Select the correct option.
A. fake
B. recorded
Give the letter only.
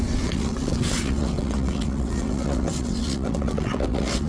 A